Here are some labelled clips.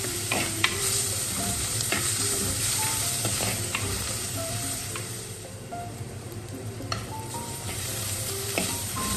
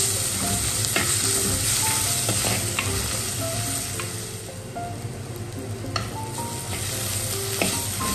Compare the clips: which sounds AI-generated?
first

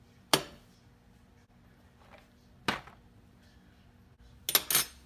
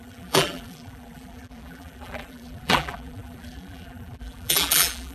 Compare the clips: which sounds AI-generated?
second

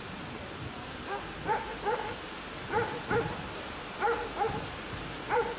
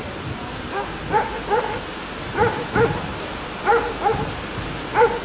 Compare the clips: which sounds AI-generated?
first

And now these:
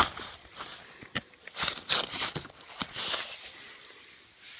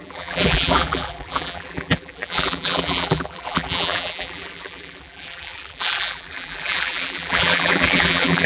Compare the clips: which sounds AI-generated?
second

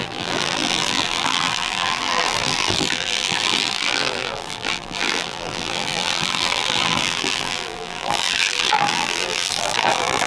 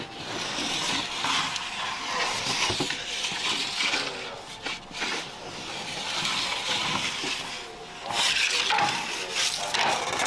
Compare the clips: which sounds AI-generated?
first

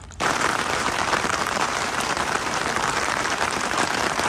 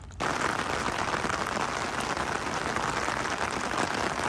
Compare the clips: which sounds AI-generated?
first